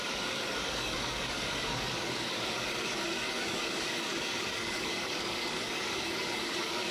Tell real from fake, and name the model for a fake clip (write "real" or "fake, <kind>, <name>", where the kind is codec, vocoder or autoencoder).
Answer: fake, codec, DAC